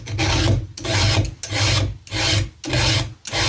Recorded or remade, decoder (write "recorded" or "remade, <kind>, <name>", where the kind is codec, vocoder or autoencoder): recorded